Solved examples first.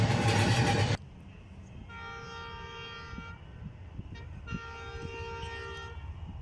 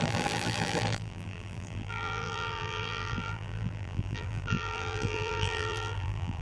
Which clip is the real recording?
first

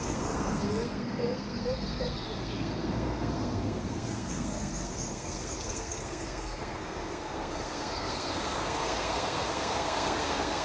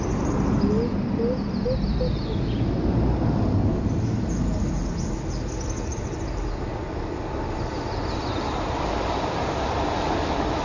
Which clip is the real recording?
second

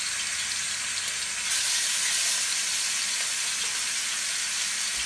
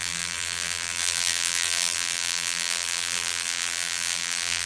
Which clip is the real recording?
first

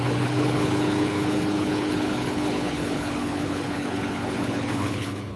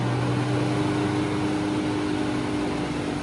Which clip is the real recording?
second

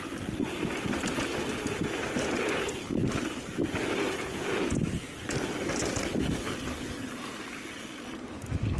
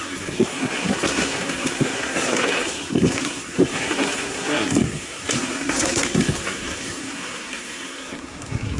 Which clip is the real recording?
first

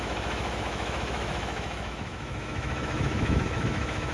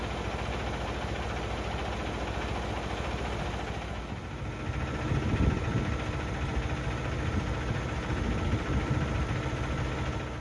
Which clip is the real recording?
second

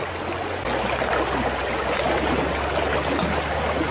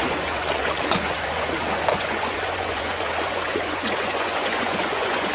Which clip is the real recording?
first